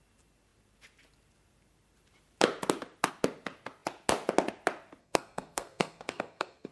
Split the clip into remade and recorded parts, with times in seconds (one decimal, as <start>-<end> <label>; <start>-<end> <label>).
0.0-5.0 recorded; 5.0-6.7 remade